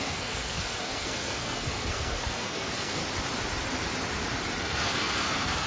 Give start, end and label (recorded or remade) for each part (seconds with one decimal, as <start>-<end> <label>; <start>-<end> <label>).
0.0-3.0 remade; 3.0-4.6 recorded; 4.6-5.7 remade